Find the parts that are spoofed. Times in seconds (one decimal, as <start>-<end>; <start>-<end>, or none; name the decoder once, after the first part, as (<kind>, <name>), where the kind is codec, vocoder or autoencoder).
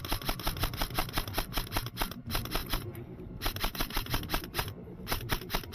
2.6-5.3 (vocoder, BigVGAN v2)